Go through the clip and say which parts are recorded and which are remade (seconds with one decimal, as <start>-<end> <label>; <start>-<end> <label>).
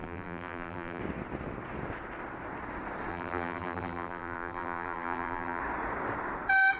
0.0-1.0 remade; 1.0-3.1 recorded; 3.1-5.6 remade; 5.6-6.8 recorded